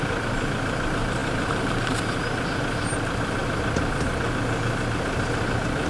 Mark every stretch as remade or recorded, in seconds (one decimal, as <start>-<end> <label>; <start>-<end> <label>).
0.0-3.4 remade; 3.4-5.4 recorded; 5.4-5.9 remade